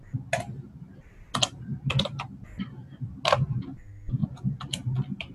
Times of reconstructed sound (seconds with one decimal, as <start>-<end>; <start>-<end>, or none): 4.2-5.3